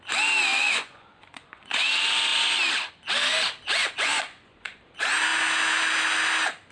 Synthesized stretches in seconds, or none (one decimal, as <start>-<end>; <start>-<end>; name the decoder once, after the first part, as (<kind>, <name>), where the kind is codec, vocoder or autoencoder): 0.5-1.9 (vocoder, Vocos); 3.8-4.8